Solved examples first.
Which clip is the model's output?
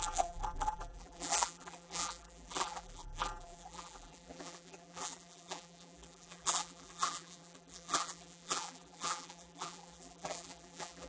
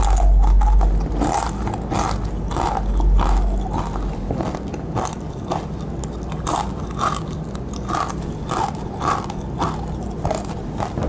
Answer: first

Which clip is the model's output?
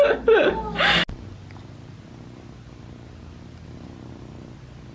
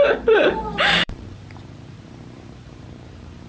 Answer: second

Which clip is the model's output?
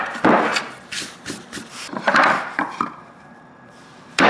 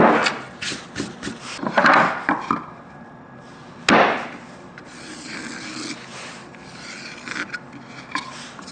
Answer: first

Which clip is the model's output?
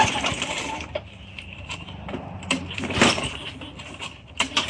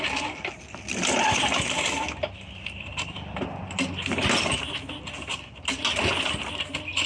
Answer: first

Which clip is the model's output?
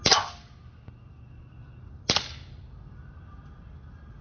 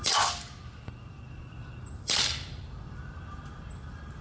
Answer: second